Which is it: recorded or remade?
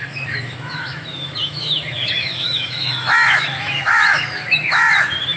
remade